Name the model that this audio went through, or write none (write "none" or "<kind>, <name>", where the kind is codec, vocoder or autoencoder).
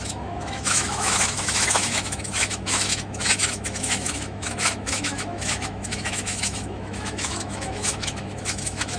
autoencoder, DAC-VAE